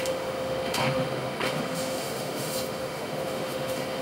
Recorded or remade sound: remade